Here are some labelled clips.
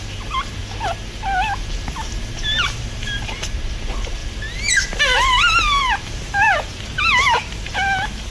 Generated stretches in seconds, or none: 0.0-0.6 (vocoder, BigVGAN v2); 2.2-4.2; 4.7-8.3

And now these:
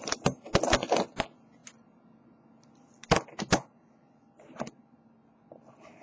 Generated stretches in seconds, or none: none

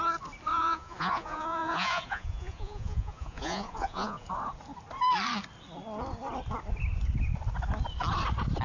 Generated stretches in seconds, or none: 0.5-4.3 (vocoder, Vocos)